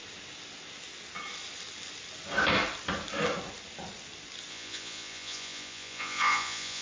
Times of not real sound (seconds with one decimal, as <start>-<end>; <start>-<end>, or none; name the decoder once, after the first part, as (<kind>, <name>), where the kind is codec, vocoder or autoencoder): 4.5-6.8 (vocoder, Vocos)